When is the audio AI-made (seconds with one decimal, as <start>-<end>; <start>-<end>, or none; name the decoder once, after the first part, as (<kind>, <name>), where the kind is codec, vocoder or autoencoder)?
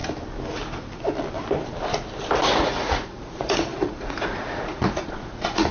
2.5-5.7 (vocoder, Vocos)